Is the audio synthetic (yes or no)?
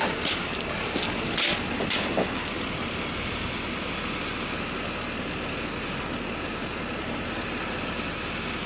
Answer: no